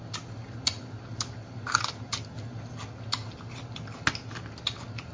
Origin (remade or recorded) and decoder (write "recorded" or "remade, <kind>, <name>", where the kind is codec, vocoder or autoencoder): recorded